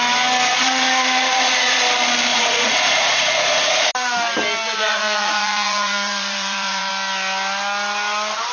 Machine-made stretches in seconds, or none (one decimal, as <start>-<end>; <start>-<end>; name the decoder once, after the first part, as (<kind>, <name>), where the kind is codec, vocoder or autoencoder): 0.5-1.8 (vocoder, Vocos); 2.3-3.9; 4.8-6.9